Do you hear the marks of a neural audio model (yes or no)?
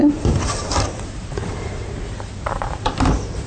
yes